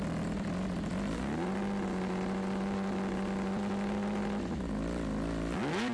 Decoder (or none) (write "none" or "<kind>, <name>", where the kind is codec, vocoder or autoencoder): none